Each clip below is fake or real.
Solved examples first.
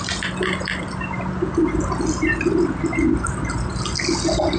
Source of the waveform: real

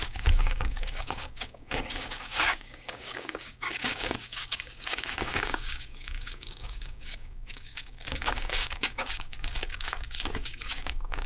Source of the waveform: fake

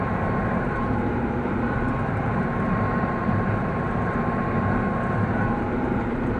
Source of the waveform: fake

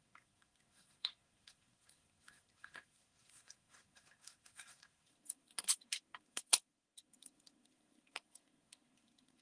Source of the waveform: fake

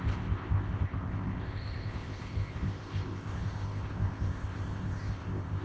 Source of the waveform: fake